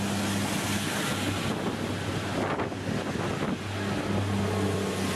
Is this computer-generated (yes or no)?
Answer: no